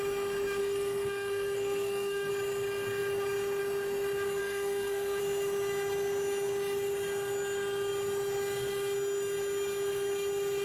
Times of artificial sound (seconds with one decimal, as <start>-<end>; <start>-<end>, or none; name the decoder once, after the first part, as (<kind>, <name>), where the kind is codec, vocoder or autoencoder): 0.6-2.3 (codec, SNAC); 4.4-5.2